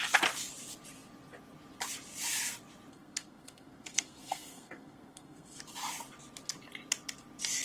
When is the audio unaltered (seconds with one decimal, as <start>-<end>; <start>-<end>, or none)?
0.0-2.9; 5.6-7.6